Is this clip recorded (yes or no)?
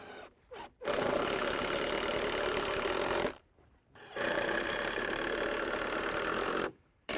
no